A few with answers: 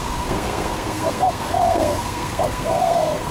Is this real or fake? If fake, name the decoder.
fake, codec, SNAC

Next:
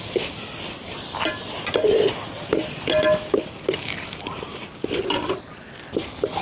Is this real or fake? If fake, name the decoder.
real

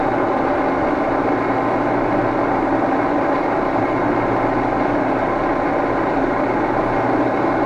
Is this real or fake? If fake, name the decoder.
real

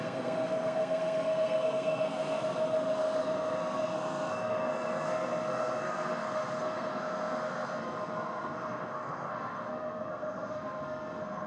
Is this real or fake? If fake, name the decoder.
fake, codec, SNAC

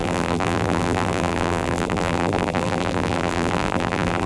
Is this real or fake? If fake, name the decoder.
fake, vocoder, BigVGAN v2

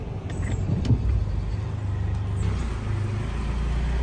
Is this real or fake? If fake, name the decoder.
real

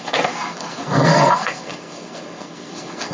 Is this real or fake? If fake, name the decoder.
fake, codec, SNAC